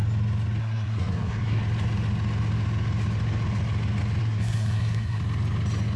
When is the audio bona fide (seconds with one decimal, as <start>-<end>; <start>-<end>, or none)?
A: 0.0-0.6; 1.6-4.2; 5.2-6.0